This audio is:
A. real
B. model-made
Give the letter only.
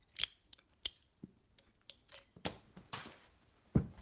A